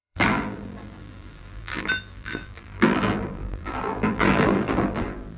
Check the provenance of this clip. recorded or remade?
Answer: remade